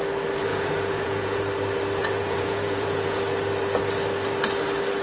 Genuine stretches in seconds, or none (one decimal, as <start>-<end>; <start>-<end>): 0.0-0.5; 1.4-2.0; 3.2-5.0